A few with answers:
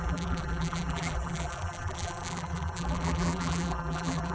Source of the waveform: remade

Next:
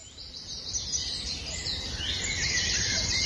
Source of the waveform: recorded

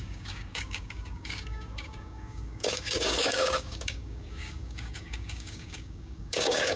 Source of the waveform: remade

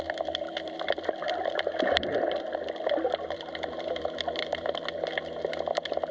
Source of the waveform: remade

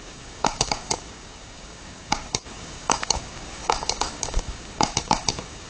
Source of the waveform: remade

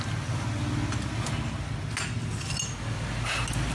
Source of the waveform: recorded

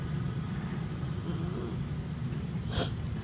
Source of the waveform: recorded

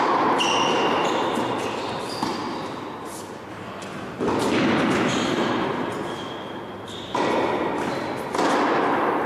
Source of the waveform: recorded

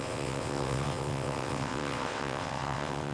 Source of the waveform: remade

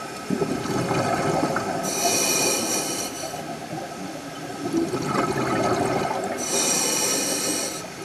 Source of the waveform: recorded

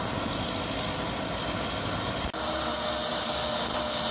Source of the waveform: recorded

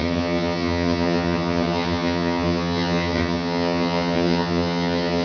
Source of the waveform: remade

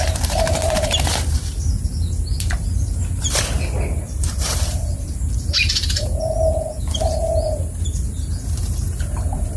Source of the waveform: remade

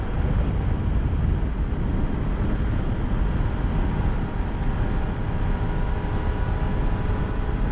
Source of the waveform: recorded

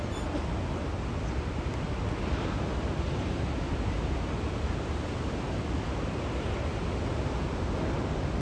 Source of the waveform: recorded